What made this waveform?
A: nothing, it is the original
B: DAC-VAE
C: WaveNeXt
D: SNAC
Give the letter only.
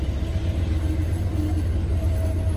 A